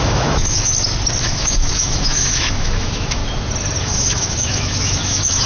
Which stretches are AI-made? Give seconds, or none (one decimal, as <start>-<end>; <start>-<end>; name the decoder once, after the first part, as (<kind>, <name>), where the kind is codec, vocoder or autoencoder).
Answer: 0.0-0.7 (autoencoder, DAC-VAE); 1.2-3.2; 3.8-5.5